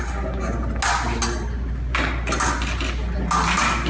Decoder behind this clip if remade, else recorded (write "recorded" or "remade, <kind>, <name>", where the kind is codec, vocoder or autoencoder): recorded